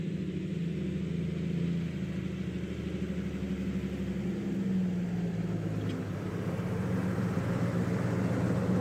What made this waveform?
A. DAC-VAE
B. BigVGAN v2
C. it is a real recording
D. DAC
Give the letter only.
C